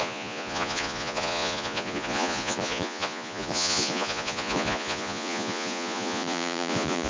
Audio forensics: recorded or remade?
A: remade